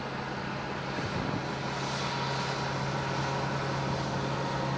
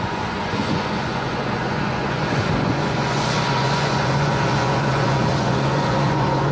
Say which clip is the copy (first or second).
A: second